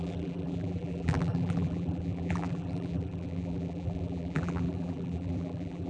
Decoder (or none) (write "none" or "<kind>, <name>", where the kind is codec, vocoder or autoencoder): vocoder, BigVGAN v2